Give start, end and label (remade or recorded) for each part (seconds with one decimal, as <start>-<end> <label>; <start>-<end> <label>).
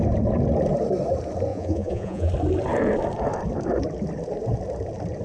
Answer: 0.0-1.5 recorded; 1.5-2.3 remade; 2.3-5.2 recorded